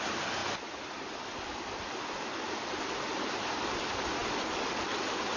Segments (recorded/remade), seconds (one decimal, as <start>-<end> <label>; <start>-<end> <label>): 0.0-5.4 recorded